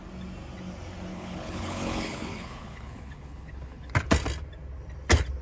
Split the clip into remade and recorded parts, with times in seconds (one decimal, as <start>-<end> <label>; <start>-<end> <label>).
0.0-1.1 recorded; 1.1-3.9 remade; 3.9-5.4 recorded